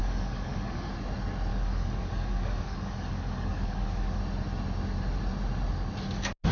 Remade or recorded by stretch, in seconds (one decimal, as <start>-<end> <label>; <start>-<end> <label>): 0.0-0.9 remade; 0.9-1.5 recorded; 1.5-4.2 remade; 4.2-6.5 recorded